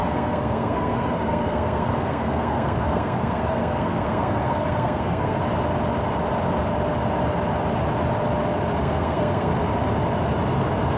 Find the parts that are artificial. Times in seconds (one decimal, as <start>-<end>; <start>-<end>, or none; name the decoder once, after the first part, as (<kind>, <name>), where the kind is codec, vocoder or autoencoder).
0.0-5.4 (codec, SNAC); 8.8-9.5